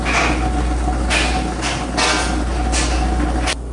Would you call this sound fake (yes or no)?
no